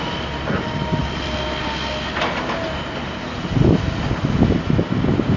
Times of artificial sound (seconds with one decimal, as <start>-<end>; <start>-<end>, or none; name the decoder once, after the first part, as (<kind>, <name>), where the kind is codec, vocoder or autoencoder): none